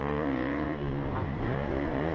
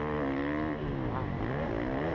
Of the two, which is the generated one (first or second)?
first